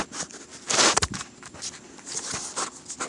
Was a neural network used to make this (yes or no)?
no